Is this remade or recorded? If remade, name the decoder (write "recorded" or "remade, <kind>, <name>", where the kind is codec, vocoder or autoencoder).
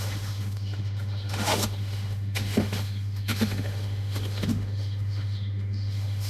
remade, autoencoder, DAC-VAE